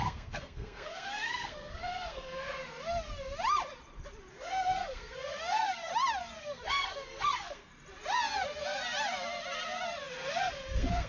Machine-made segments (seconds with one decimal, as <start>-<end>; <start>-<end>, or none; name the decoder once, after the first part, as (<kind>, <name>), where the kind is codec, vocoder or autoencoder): 0.0-2.4 (codec, SNAC); 4.3-5.9; 6.4-7.7; 10.4-11.1